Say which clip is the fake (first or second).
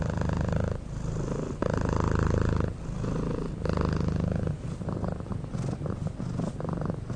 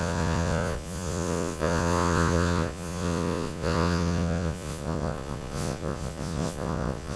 second